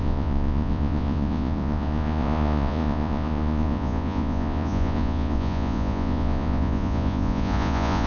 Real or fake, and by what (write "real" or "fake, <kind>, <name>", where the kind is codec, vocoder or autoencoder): fake, vocoder, Vocos